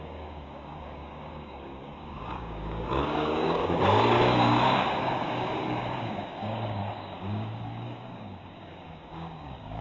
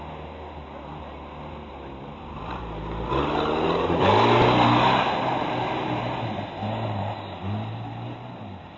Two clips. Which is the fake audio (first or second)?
first